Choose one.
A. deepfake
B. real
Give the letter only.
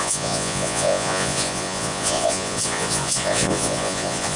A